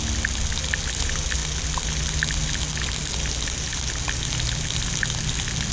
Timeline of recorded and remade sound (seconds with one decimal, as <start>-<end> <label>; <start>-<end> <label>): 0.0-5.7 recorded